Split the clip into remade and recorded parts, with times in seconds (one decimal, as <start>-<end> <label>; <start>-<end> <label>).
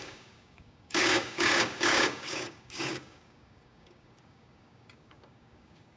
0.0-6.0 remade